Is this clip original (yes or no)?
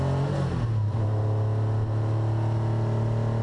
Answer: yes